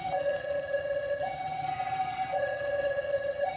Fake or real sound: fake